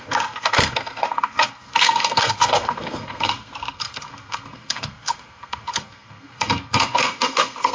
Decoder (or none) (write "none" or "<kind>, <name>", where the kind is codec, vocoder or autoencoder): codec, SNAC